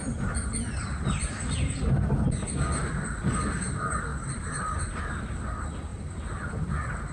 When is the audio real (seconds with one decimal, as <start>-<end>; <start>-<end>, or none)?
0.0-4.1; 5.0-7.1